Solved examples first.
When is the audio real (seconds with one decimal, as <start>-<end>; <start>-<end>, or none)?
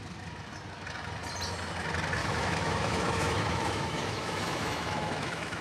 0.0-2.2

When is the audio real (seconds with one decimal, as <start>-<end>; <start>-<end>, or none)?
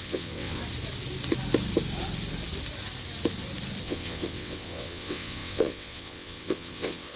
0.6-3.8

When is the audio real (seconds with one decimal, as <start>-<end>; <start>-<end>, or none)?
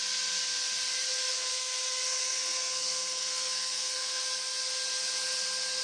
0.0-1.3; 4.2-5.8